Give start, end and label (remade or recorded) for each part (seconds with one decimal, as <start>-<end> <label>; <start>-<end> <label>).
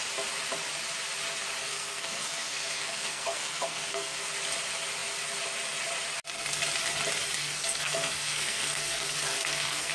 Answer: 0.0-1.6 recorded; 1.6-4.3 remade; 4.3-7.4 recorded; 7.4-9.9 remade